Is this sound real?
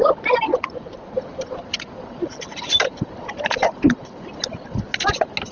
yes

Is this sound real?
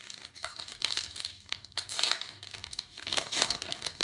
no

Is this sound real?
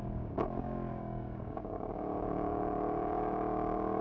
no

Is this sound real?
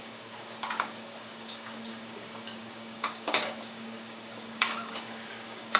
no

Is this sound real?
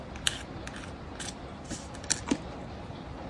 yes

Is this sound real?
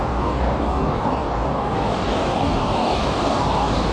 no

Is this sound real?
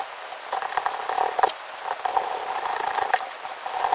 yes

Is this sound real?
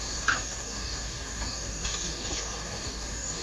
no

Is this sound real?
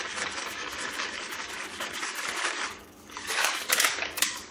no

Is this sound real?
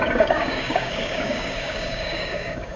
no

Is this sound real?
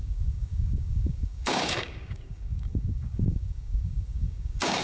no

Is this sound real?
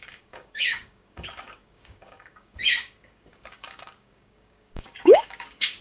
no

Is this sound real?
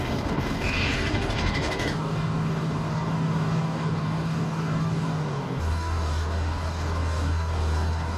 no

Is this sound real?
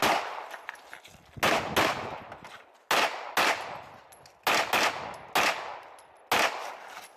yes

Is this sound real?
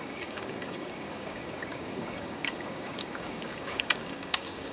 no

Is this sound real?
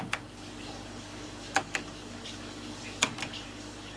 no